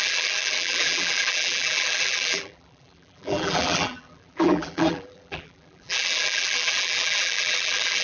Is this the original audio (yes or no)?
no